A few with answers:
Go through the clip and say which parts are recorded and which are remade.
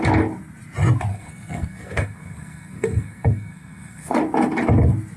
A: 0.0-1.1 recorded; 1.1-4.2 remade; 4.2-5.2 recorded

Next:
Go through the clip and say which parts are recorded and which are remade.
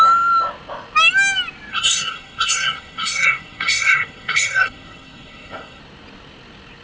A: 0.0-1.7 recorded; 1.7-5.8 remade; 5.8-6.8 recorded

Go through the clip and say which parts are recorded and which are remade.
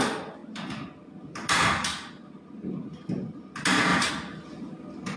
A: 0.0-5.2 recorded